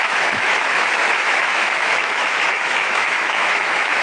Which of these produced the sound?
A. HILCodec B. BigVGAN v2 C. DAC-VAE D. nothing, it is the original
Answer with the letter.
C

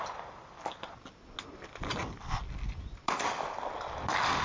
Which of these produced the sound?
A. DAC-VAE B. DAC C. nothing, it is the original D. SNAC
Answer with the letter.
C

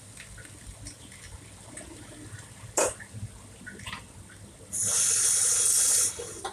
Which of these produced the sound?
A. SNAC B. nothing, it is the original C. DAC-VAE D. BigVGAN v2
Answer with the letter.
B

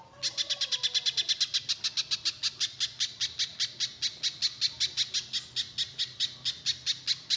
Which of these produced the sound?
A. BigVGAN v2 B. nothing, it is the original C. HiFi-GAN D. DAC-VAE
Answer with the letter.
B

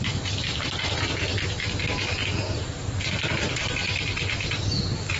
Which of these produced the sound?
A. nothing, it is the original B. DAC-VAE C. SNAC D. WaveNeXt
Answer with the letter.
A